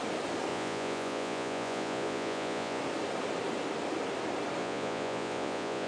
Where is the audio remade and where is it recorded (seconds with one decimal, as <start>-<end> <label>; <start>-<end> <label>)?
0.0-0.5 recorded; 0.5-2.8 remade; 2.8-4.6 recorded; 4.6-5.9 remade